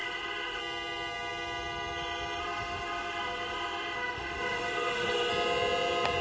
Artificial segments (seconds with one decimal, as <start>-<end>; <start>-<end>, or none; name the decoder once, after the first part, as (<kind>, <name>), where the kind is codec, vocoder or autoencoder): 0.0-0.6 (autoencoder, DAC-VAE); 2.4-5.3